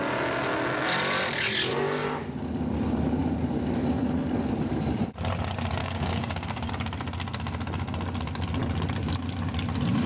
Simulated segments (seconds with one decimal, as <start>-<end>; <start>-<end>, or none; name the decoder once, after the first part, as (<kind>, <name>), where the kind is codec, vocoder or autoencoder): 1.7-2.2 (codec, DAC); 5.8-6.7